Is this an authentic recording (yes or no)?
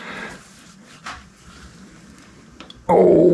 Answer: yes